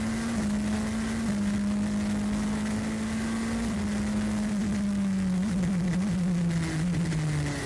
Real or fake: real